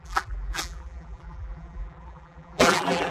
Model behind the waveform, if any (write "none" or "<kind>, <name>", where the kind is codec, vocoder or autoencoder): vocoder, BigVGAN v2